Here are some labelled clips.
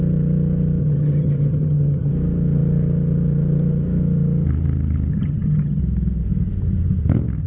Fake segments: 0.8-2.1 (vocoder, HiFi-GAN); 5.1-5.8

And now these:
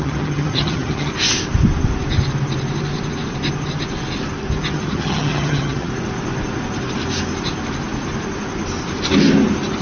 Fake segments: 0.0-1.1 (vocoder, HiFi-GAN); 4.7-5.9

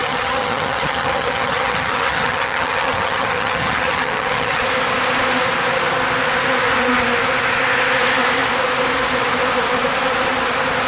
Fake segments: 0.0-4.6 (vocoder, HiFi-GAN)

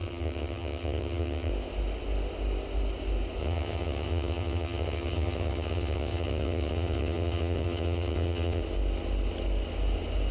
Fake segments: 0.0-1.5 (vocoder, HiFi-GAN); 3.4-8.6

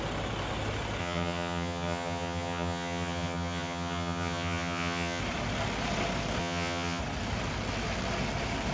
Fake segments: 1.0-5.2 (vocoder, HiFi-GAN); 6.4-7.0

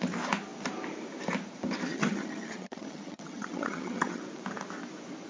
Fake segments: 1.9-4.2 (vocoder, HiFi-GAN)